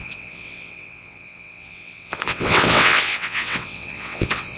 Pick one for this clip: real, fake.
fake